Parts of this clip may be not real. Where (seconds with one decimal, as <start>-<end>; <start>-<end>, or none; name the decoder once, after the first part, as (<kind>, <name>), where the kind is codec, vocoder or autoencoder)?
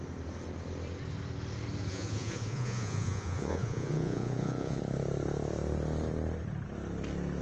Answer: 1.9-4.8 (vocoder, Vocos)